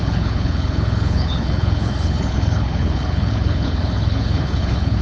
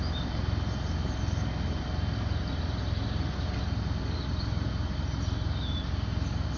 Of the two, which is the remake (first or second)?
first